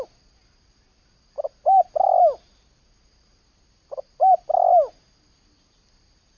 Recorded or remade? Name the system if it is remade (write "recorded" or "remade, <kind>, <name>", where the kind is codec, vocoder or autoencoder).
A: recorded